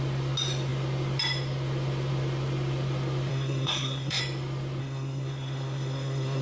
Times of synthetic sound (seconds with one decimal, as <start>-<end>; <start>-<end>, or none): 3.3-4.2; 4.8-6.4